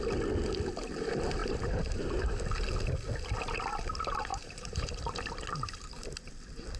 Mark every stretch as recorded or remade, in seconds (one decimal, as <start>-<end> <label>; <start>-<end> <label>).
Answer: 0.0-1.4 recorded; 1.4-2.4 remade; 2.4-4.3 recorded; 4.3-5.3 remade; 5.3-6.8 recorded